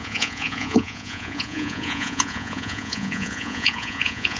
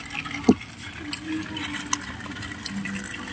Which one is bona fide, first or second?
second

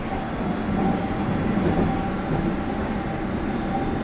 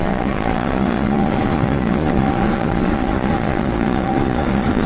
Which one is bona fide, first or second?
first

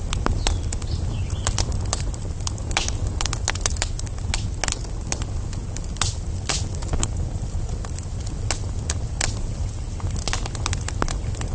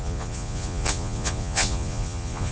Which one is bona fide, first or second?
first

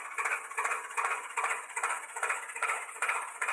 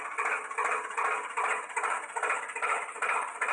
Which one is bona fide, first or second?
second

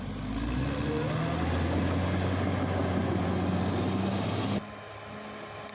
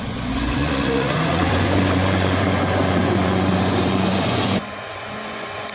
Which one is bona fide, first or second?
first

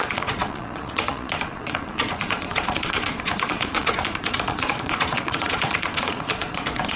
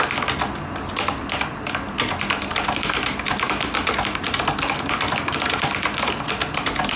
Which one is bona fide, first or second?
second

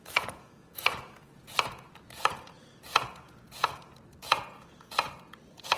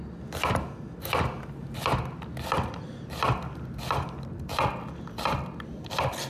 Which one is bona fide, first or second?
second